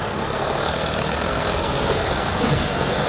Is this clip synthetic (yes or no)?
yes